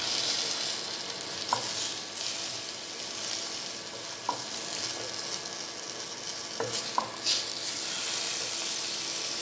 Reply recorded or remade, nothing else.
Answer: recorded